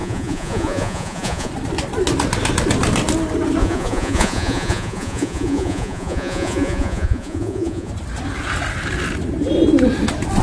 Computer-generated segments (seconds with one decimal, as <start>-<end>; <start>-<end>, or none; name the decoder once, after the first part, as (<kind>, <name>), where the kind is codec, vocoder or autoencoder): 0.0-1.5 (vocoder, Vocos); 3.6-7.9